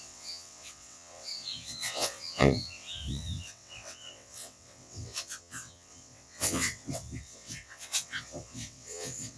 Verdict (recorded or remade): remade